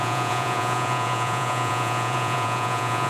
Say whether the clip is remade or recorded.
remade